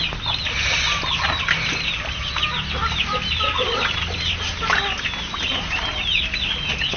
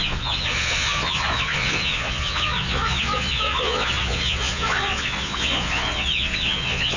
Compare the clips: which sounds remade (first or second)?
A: second